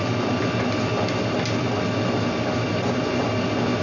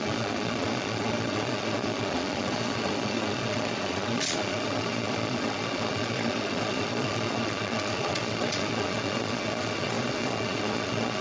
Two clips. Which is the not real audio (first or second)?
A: second